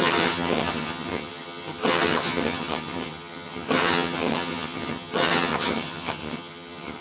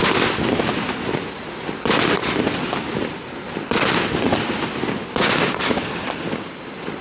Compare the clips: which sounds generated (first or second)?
first